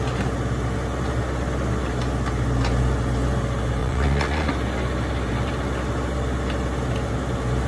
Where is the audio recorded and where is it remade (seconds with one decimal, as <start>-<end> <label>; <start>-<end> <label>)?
0.0-3.8 recorded; 3.8-4.5 remade; 4.5-7.7 recorded